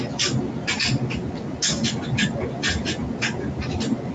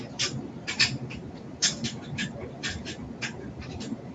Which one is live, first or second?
first